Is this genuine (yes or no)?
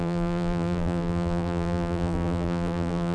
no